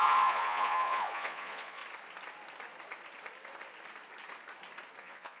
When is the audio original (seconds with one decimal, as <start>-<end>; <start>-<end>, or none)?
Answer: 1.8-5.0